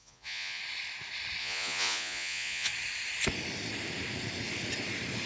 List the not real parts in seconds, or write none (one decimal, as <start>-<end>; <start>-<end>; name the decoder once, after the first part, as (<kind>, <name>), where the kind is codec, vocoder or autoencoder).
0.0-0.6 (vocoder, Vocos); 1.4-2.7